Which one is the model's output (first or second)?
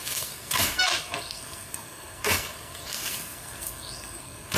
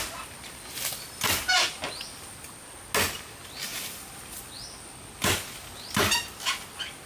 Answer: first